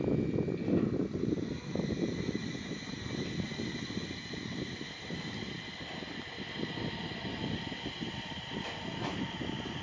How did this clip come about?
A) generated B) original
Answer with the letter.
B